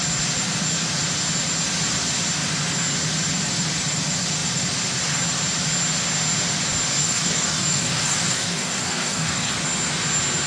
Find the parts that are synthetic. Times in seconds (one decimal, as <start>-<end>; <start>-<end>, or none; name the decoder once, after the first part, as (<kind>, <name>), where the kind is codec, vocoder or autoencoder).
7.0-9.5 (codec, DAC)